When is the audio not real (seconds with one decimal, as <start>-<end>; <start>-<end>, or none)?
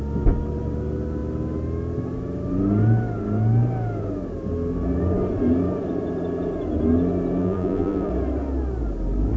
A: 7.4-8.1